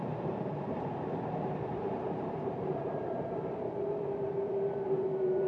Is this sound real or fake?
fake